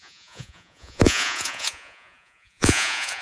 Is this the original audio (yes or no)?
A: no